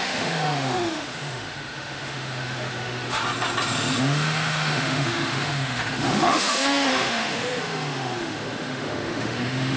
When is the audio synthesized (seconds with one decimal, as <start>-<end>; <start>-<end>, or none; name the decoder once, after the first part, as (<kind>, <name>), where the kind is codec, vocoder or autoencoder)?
0.0-3.2 (autoencoder, DAC-VAE); 4.0-9.8